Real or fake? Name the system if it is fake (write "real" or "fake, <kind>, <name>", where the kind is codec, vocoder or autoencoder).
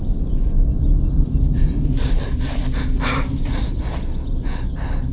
real